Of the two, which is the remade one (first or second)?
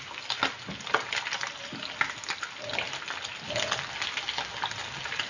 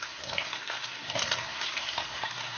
second